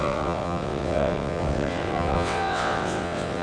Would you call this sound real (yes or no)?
no